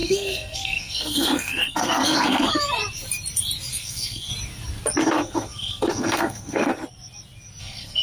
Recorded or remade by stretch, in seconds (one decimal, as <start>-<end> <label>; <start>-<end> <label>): 0.0-2.5 remade; 2.5-3.7 recorded; 3.7-4.3 remade; 4.3-5.0 recorded; 5.0-6.7 remade; 6.7-7.6 recorded; 7.6-8.0 remade